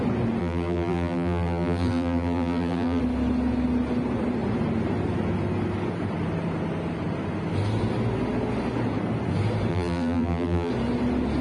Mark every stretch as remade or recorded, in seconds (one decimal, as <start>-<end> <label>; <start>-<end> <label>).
0.0-0.4 recorded; 0.4-3.0 remade; 3.0-9.7 recorded; 9.7-10.7 remade; 10.7-11.4 recorded